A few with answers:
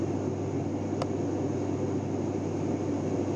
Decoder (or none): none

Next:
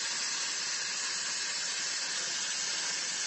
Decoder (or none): none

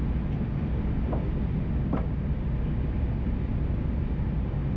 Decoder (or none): none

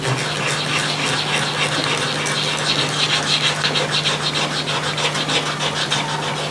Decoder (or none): none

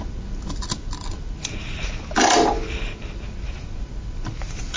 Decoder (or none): none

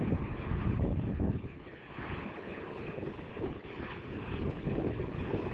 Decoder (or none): codec, HILCodec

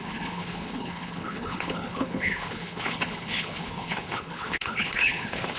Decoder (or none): codec, HILCodec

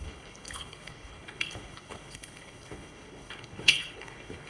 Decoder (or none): codec, HILCodec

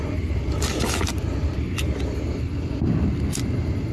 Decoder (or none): none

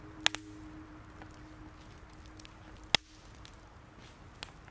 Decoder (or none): none